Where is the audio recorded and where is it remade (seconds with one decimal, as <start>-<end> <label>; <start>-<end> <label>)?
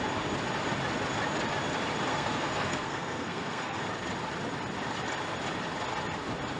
0.0-2.1 recorded; 2.1-3.8 remade; 3.8-6.6 recorded